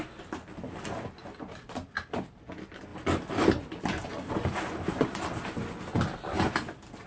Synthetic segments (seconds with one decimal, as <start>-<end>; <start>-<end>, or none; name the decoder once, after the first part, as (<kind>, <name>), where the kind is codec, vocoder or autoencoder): none